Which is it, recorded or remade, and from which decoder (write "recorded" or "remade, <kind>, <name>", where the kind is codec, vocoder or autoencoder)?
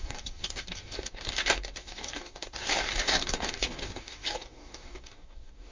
remade, codec, DAC